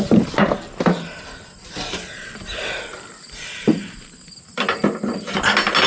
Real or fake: real